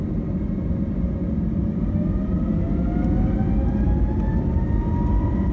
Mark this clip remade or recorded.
recorded